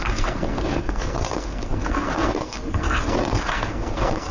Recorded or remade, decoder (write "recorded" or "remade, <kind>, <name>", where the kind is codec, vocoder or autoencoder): remade, codec, SNAC